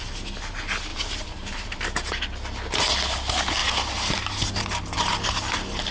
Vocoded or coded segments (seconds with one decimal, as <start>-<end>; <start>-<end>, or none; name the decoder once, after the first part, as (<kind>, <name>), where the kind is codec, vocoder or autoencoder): 0.9-2.1 (vocoder, BigVGAN v2)